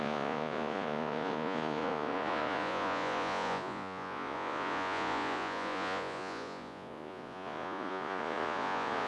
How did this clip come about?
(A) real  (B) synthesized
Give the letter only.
B